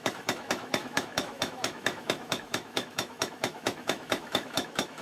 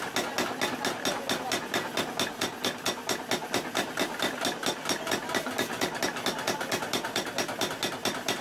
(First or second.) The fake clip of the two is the first